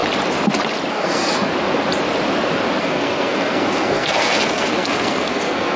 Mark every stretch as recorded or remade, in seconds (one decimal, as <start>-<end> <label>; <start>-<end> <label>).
0.0-0.9 recorded; 0.9-1.5 remade; 1.5-2.8 recorded; 2.8-5.8 remade